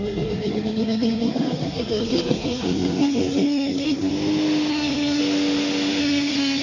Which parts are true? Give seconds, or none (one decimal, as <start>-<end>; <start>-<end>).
4.1-4.7; 5.2-6.0